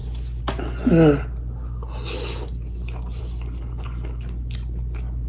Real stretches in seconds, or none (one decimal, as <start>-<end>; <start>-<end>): 0.0-5.3